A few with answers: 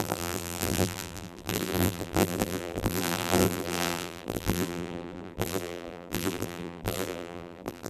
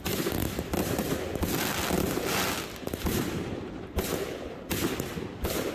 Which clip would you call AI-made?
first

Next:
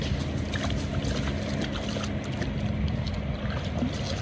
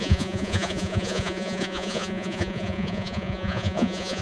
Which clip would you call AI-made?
second